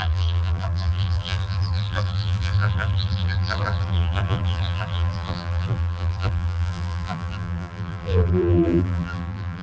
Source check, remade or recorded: remade